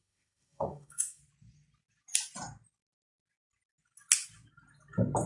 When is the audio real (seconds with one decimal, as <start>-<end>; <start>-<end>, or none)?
1.2-5.3